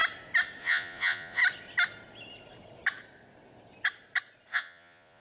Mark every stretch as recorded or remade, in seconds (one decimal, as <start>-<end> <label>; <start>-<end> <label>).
0.0-0.6 recorded; 0.6-1.4 remade; 1.4-4.5 recorded; 4.5-5.2 remade